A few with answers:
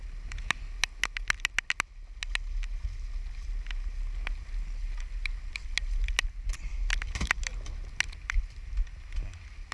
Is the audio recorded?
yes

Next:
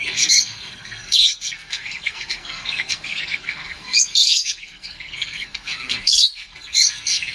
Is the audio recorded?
no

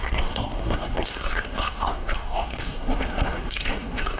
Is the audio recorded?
no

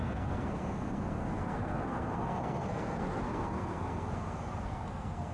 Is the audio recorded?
no